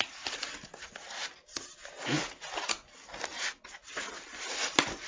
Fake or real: real